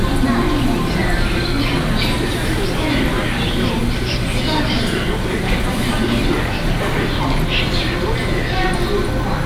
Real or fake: real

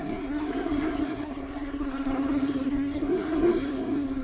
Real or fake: fake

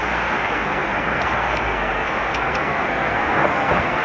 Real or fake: fake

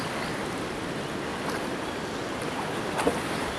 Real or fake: real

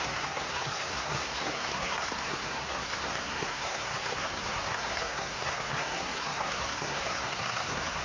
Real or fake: fake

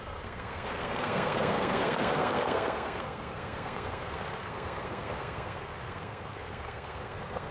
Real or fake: fake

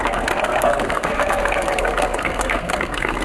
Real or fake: fake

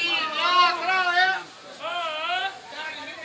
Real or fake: real